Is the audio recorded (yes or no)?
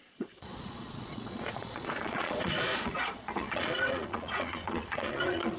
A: no